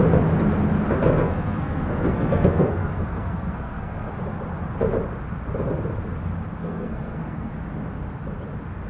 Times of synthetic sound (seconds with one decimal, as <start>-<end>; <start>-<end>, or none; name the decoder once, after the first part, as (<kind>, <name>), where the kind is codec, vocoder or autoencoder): 1.0-4.1 (codec, SNAC); 6.6-7.5